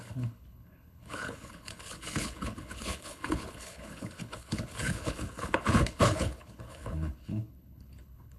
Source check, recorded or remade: remade